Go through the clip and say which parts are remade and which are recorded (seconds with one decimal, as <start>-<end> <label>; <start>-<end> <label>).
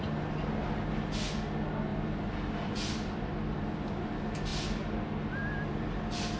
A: 0.0-1.9 recorded; 1.9-4.0 remade; 4.0-6.4 recorded